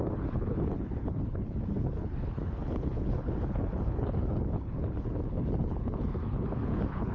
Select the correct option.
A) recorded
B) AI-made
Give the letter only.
B